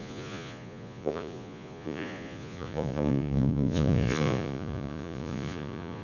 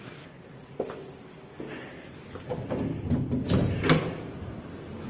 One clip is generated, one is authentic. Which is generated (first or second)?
first